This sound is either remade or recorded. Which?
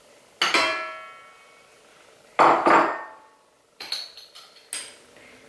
recorded